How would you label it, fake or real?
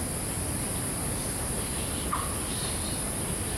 real